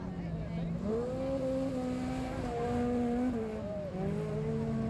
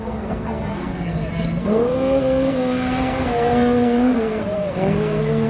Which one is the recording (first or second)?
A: first